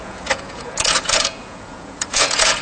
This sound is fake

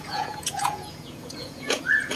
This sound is fake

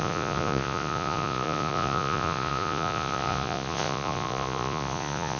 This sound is fake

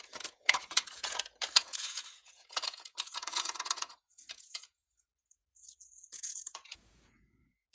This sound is fake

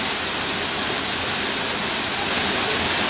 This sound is real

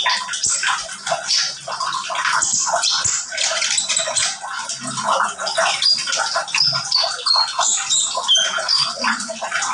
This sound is real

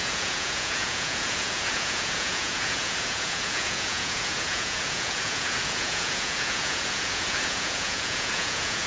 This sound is fake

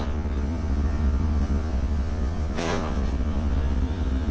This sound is fake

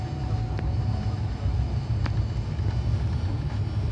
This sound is real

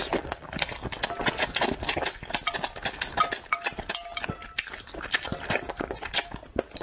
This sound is real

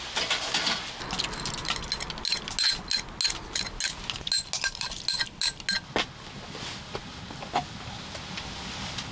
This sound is real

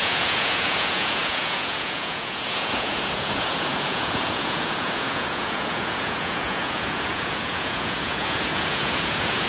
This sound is fake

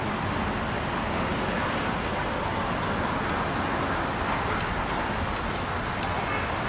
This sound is real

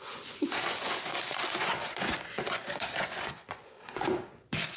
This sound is fake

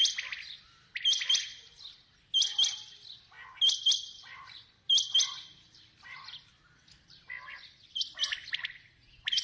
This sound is real